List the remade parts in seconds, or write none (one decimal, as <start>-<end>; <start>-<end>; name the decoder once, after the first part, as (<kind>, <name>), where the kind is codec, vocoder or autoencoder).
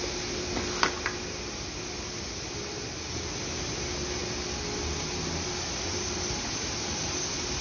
none